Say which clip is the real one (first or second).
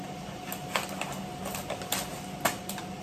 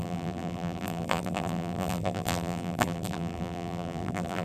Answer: first